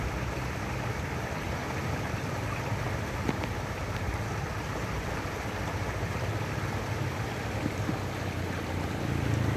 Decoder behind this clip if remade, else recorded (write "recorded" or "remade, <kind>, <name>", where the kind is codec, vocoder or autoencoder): remade, vocoder, BigVGAN v2